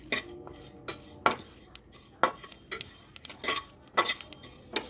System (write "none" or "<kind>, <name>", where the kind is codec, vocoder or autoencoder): none